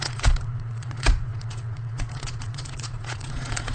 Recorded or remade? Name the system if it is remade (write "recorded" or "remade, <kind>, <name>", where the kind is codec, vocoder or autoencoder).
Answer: remade, vocoder, Vocos